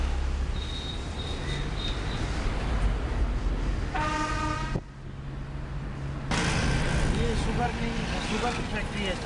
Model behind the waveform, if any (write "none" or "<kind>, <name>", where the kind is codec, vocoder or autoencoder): none